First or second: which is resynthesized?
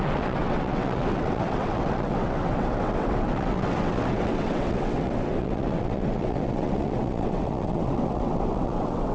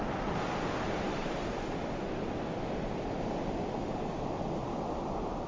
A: first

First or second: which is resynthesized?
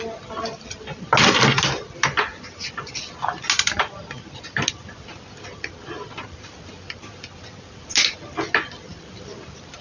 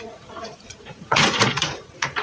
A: second